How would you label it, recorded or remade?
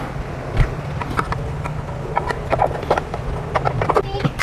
recorded